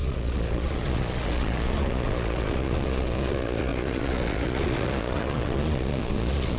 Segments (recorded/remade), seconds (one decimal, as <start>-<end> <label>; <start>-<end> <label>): 0.0-6.6 remade